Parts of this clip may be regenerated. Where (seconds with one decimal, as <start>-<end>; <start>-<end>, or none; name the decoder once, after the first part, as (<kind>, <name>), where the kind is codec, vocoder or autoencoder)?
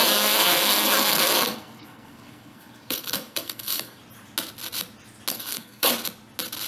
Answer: 0.0-4.0 (codec, SNAC); 5.3-5.9